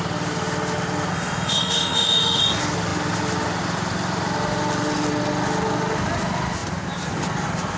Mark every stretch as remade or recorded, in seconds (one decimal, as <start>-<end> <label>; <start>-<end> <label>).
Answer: 0.0-1.1 recorded; 1.1-2.4 remade; 2.4-7.8 recorded